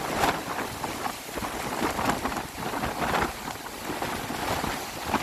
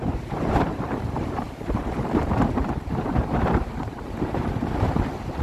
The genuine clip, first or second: first